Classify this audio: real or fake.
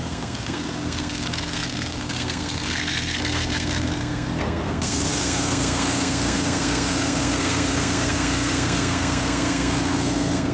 fake